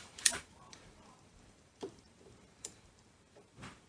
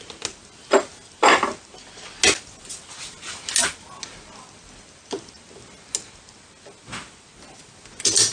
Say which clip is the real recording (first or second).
second